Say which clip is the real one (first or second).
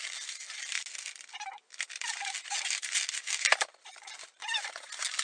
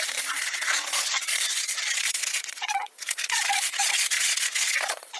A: first